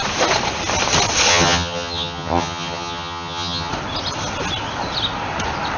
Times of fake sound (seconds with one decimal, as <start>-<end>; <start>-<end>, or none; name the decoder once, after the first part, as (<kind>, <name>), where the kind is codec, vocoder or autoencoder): 1.3-3.7 (vocoder, HiFi-GAN)